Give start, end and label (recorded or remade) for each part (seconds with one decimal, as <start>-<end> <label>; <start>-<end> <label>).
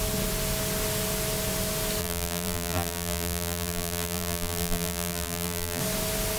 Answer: 0.0-2.0 recorded; 2.0-5.8 remade; 5.8-6.4 recorded